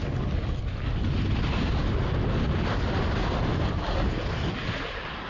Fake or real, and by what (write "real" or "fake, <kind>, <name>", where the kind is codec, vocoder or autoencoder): real